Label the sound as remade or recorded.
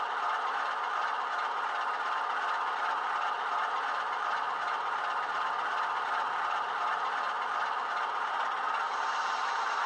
recorded